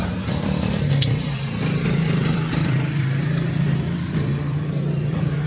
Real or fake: fake